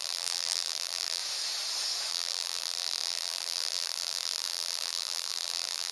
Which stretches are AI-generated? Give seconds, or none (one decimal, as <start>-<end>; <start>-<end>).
0.0-1.2; 2.1-5.9